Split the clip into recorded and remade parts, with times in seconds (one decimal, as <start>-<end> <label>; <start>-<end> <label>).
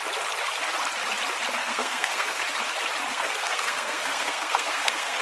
0.0-1.6 recorded; 1.6-2.4 remade; 2.4-3.1 recorded; 3.1-5.2 remade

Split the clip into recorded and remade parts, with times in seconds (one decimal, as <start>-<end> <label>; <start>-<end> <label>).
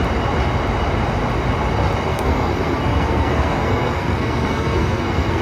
0.0-2.1 recorded; 2.1-5.4 remade